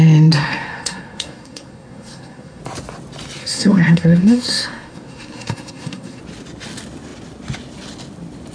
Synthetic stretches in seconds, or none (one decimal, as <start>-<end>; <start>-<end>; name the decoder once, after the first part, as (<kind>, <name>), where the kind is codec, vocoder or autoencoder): 0.4-2.6 (codec, SNAC); 3.4-6.2